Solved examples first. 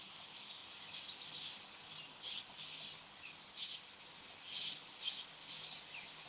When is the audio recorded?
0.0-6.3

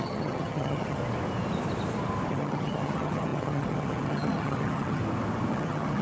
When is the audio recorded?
1.0-2.3; 5.0-5.5

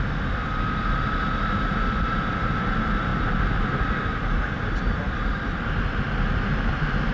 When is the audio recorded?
0.0-7.1

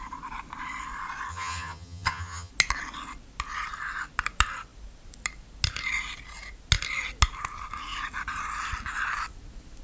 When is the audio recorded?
0.0-1.3; 2.5-9.8